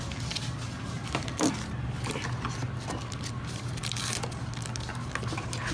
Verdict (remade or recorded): recorded